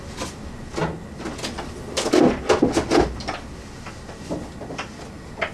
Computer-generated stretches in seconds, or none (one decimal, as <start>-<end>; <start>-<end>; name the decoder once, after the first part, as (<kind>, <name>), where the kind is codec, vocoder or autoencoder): none